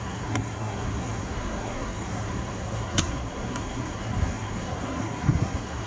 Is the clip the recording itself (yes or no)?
no